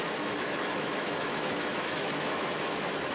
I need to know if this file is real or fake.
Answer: fake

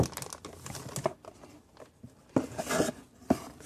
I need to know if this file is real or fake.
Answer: real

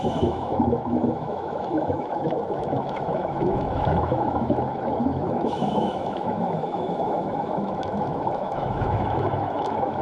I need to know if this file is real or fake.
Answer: fake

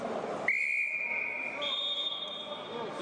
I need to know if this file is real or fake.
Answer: real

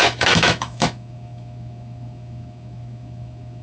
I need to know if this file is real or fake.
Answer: fake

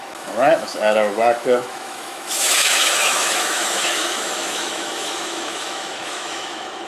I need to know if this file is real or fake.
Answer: fake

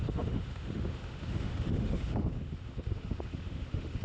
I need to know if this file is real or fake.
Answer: fake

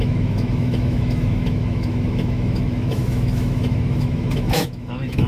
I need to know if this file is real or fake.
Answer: fake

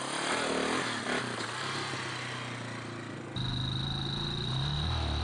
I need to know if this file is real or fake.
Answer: real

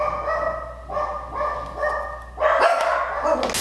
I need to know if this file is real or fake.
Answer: real